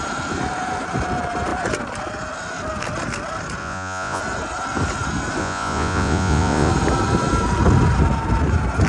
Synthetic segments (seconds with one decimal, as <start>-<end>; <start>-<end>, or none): 3.6-4.2; 5.4-6.7